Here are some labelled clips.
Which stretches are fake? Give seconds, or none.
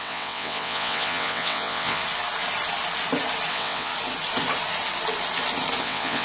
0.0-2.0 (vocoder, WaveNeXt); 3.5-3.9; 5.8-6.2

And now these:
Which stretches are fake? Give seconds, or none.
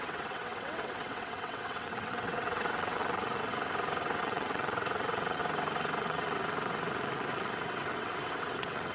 0.0-3.5 (vocoder, WaveNeXt); 4.2-5.4; 6.0-8.9